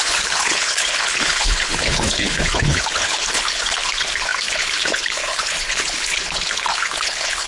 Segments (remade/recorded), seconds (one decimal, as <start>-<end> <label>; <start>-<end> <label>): 0.0-7.5 remade